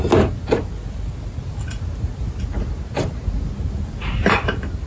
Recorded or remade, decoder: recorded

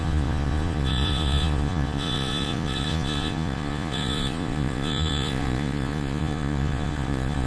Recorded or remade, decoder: remade, vocoder, Vocos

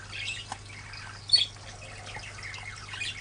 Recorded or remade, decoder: recorded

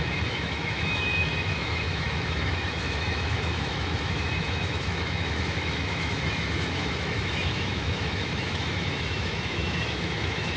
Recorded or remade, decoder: remade, autoencoder, DAC-VAE